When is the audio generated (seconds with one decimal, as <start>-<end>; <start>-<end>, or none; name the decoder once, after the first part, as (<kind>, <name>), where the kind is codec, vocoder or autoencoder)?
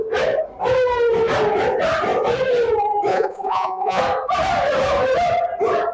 3.1-4.0 (vocoder, Vocos)